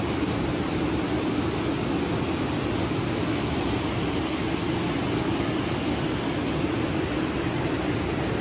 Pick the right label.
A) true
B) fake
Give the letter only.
A